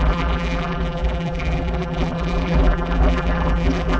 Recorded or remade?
remade